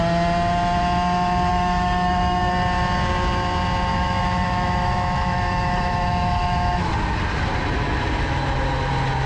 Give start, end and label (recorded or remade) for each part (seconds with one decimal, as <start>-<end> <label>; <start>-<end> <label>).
0.0-1.5 recorded; 1.5-2.5 remade; 2.5-3.9 recorded; 3.9-6.9 remade; 6.9-9.3 recorded